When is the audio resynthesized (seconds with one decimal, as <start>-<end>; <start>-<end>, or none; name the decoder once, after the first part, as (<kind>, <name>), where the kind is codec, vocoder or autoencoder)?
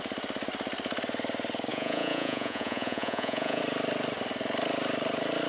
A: 1.7-3.6 (vocoder, Vocos)